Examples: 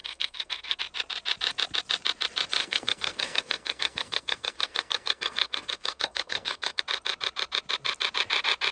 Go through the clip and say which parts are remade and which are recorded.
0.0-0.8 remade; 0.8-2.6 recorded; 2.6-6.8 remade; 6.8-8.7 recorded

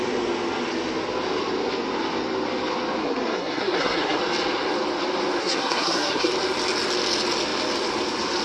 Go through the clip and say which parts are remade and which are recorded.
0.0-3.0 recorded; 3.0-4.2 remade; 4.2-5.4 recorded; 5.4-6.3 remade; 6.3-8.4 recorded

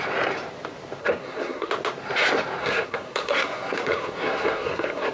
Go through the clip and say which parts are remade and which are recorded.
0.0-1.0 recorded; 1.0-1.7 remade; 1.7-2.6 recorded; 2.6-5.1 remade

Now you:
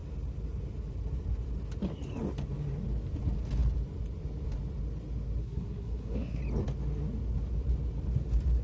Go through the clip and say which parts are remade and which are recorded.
0.0-5.4 recorded; 5.4-6.4 remade; 6.4-8.6 recorded

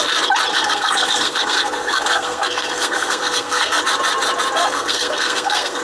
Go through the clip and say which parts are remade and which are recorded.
0.0-0.5 recorded; 0.5-3.8 remade; 3.8-4.6 recorded; 4.6-5.8 remade

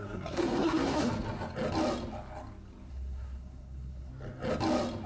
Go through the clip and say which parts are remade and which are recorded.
0.0-1.1 remade; 1.1-2.9 recorded; 2.9-4.1 remade; 4.1-5.1 recorded